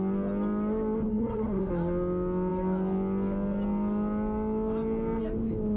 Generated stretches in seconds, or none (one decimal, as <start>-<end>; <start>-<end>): 1.1-1.7